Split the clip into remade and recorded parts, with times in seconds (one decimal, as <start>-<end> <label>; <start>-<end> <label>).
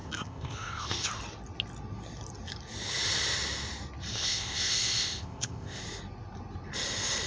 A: 0.0-1.1 remade; 1.1-4.1 recorded; 4.1-5.8 remade; 5.8-7.3 recorded